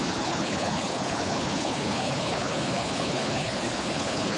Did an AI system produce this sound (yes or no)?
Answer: yes